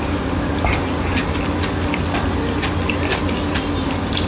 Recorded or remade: recorded